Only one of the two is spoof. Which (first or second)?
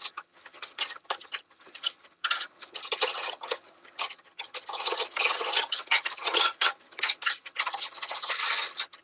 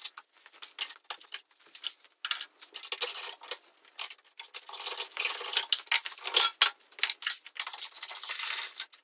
first